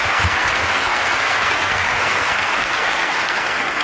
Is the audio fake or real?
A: fake